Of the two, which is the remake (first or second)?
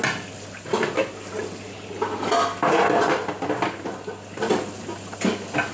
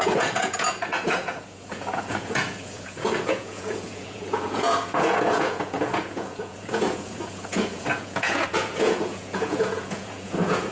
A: second